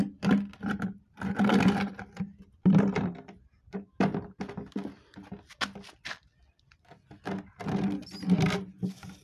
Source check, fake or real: real